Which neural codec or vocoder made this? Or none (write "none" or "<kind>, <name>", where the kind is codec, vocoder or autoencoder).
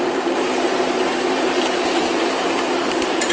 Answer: vocoder, BigVGAN v2